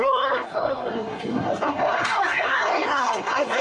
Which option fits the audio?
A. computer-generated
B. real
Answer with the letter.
A